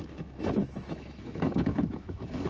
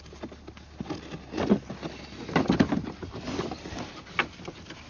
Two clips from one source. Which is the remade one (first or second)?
first